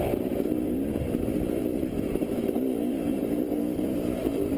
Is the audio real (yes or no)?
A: no